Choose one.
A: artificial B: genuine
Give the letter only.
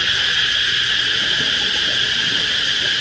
B